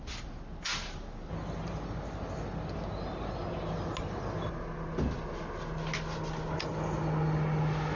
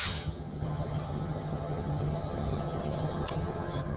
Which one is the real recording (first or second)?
first